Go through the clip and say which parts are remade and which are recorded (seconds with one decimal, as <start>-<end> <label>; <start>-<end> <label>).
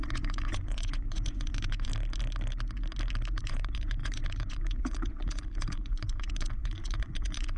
0.0-1.9 remade; 1.9-3.4 recorded; 3.4-7.6 remade